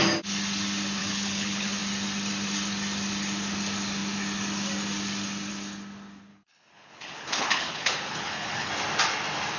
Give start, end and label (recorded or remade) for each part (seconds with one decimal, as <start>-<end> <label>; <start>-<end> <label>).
0.0-1.0 recorded; 1.0-1.8 remade; 1.8-6.3 recorded; 6.3-8.7 remade; 8.7-9.6 recorded